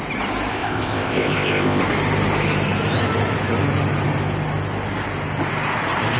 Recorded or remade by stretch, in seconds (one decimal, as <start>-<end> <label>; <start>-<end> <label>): 0.0-0.5 recorded; 0.5-1.8 remade; 1.8-6.2 recorded